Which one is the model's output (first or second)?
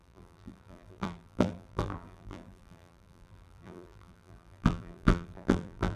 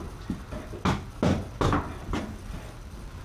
first